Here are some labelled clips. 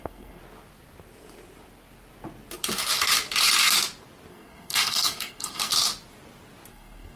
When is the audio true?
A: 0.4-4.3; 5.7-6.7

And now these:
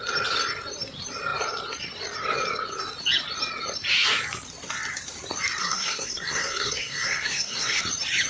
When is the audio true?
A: 0.0-5.6; 7.8-8.3

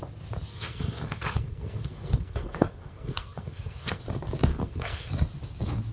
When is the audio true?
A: 0.0-0.5; 4.0-4.5; 5.1-5.9